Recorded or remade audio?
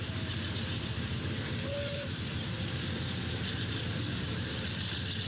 remade